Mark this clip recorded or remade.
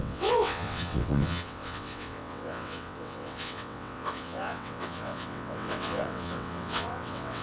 remade